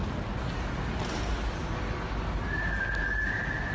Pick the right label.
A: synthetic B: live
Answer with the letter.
B